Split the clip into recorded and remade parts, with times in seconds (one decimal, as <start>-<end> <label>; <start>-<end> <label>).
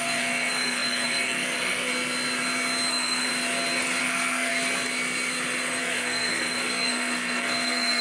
0.0-1.9 remade; 1.9-2.9 recorded; 2.9-3.3 remade; 3.3-4.0 recorded; 4.0-4.5 remade; 4.5-5.8 recorded; 5.8-8.0 remade